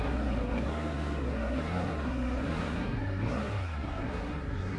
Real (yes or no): no